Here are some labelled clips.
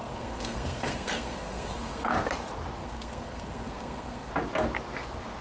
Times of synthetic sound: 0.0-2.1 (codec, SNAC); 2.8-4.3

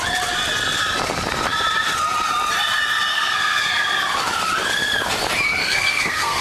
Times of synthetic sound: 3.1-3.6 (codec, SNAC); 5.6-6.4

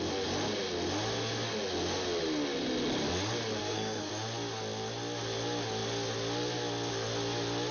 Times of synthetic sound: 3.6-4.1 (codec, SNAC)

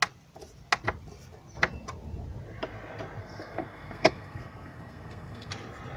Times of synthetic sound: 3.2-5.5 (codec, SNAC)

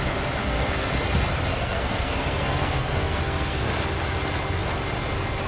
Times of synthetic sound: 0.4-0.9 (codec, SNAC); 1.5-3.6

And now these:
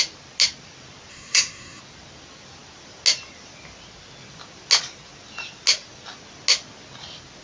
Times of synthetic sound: 1.1-1.8 (codec, SNAC)